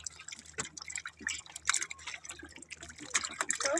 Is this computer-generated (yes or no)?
no